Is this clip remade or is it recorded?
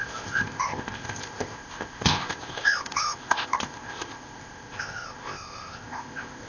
remade